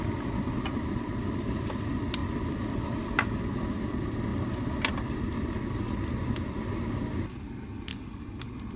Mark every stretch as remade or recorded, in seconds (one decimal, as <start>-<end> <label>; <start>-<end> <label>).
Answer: 0.0-7.9 recorded; 7.9-8.4 remade; 8.4-8.8 recorded